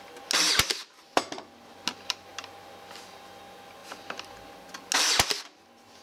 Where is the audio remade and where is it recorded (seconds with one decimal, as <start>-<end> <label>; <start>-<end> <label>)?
0.0-0.8 recorded; 0.8-1.3 remade; 1.3-6.0 recorded